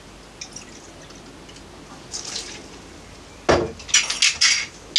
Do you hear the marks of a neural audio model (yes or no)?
no